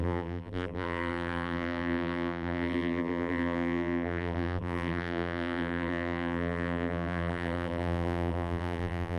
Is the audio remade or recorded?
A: remade